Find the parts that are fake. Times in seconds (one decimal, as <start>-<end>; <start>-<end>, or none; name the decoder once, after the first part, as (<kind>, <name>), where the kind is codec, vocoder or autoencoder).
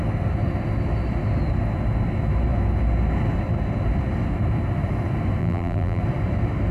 5.4-6.0 (vocoder, BigVGAN v2)